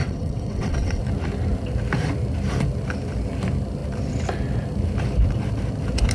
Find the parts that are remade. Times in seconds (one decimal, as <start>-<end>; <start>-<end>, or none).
0.0-1.0